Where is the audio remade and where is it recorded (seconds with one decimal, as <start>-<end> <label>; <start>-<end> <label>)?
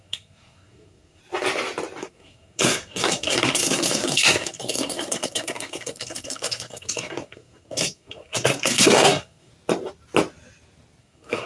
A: 0.0-1.2 remade; 1.2-2.0 recorded; 2.0-9.5 remade; 9.5-11.0 recorded; 11.0-11.5 remade